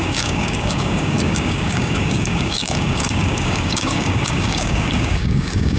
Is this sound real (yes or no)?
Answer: no